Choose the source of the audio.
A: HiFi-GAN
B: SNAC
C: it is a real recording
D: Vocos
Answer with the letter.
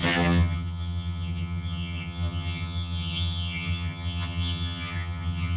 A